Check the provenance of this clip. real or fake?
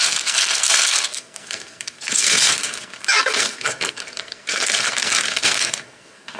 fake